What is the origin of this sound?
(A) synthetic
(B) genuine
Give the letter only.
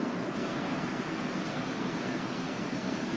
A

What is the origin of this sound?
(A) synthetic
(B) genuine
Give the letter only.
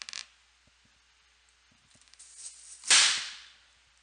B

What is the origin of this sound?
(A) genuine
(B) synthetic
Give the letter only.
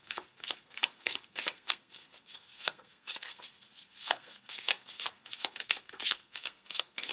B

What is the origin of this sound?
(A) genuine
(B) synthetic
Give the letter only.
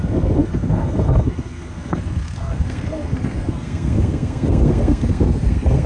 B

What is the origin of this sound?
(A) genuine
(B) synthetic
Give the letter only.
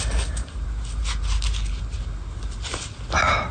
A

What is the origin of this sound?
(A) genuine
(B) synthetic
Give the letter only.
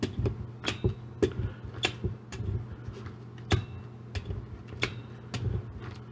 A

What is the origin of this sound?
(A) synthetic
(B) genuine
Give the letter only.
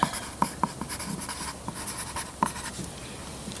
B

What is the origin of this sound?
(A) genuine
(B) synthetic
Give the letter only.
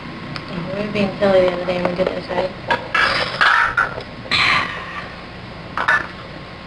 A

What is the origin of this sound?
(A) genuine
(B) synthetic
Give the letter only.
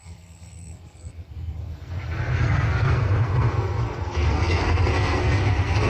B